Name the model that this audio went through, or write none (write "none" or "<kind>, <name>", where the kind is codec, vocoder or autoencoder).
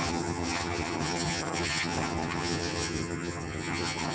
vocoder, HiFi-GAN